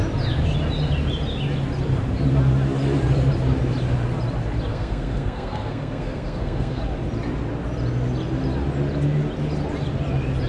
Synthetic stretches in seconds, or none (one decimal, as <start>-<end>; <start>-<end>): 4.7-6.8